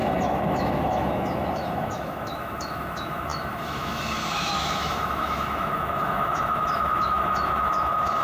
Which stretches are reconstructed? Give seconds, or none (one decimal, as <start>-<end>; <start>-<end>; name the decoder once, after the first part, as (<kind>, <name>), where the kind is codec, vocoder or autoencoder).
0.0-8.2 (autoencoder, DAC-VAE)